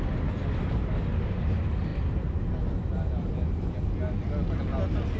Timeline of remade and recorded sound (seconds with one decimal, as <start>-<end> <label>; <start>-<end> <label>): 0.0-5.2 recorded